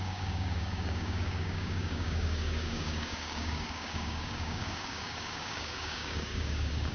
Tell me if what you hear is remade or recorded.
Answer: remade